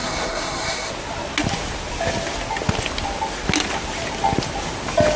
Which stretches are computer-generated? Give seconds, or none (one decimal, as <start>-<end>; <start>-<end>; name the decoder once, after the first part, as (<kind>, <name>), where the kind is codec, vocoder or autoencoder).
0.0-0.9 (codec, SNAC)